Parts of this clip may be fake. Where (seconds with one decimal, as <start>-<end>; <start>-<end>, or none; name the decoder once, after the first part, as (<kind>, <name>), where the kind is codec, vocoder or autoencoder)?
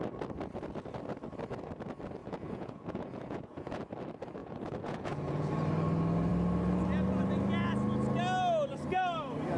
2.2-3.8 (vocoder, Vocos); 4.4-5.5